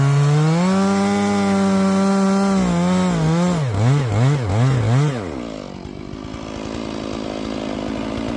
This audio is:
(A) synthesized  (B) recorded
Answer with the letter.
B